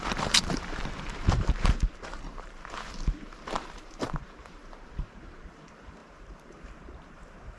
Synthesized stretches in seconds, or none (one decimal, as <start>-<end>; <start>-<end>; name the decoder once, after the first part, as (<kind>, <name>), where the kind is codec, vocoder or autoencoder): 0.0-7.6 (vocoder, BigVGAN v2)